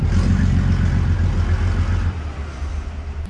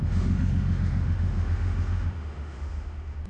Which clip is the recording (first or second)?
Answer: first